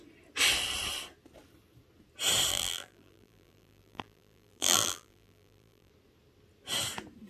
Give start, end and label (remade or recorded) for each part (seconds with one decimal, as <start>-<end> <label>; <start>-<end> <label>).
0.0-2.5 recorded; 2.5-5.9 remade; 5.9-7.3 recorded